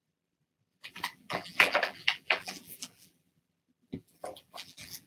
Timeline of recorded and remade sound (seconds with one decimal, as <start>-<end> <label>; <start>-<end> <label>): 0.0-5.1 remade